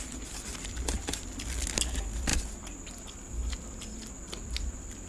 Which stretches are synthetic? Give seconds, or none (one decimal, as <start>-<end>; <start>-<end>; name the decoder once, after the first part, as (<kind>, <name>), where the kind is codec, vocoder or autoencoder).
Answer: none